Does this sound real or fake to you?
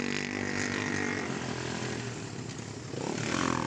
real